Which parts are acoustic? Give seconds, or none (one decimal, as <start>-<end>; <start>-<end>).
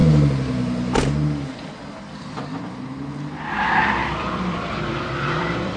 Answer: 0.0-3.5